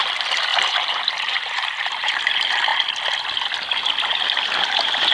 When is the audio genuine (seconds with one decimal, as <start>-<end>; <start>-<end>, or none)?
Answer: 0.0-0.5; 2.2-5.1